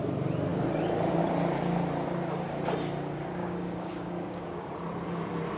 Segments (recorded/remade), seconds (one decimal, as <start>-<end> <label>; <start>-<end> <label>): 0.0-3.4 recorded; 3.4-4.7 remade; 4.7-5.6 recorded

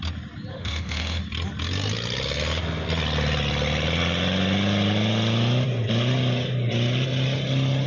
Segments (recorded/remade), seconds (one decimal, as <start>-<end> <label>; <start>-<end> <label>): 0.0-0.5 recorded; 0.5-1.2 remade; 1.2-7.9 recorded

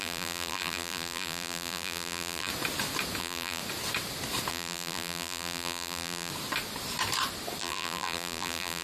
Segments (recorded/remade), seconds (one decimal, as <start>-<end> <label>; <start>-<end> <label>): 0.0-2.5 remade; 2.5-3.2 recorded; 3.2-3.6 remade; 3.6-4.5 recorded; 4.5-6.3 remade; 6.3-7.6 recorded; 7.6-8.8 remade

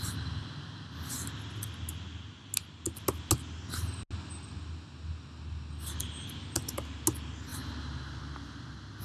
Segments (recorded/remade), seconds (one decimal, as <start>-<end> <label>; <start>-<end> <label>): 0.0-9.0 recorded

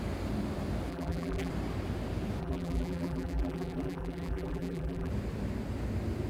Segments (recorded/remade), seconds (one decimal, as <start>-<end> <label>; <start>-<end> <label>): 0.0-0.9 recorded; 0.9-1.5 remade; 1.5-2.4 recorded; 2.4-5.1 remade; 5.1-6.3 recorded